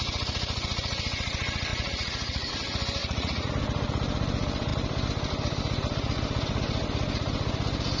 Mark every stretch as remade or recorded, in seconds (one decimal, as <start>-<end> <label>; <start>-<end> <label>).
0.0-1.7 recorded; 1.7-2.5 remade; 2.5-3.0 recorded; 3.0-3.5 remade; 3.5-8.0 recorded